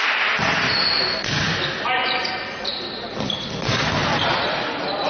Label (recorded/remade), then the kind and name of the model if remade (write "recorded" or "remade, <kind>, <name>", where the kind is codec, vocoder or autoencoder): recorded